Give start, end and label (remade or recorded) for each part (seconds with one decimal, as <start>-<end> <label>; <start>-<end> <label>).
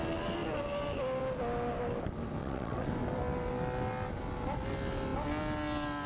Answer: 0.0-2.4 recorded; 2.4-2.9 remade; 2.9-6.1 recorded